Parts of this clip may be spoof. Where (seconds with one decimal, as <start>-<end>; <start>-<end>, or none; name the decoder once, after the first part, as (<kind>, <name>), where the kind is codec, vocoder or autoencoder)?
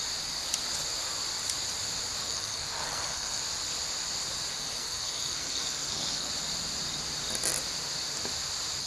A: 2.2-3.4 (codec, SNAC); 4.5-6.3